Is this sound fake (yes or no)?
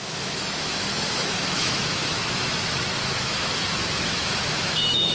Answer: yes